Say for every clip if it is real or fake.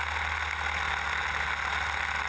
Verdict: real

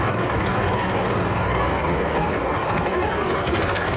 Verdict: fake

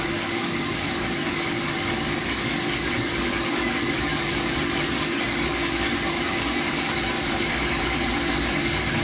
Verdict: fake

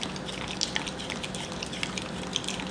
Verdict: real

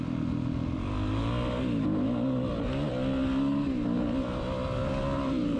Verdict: real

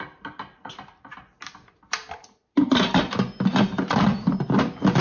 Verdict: real